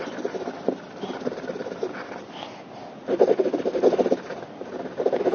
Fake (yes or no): no